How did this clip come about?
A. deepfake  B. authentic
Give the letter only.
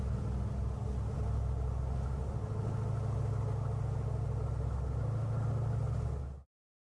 B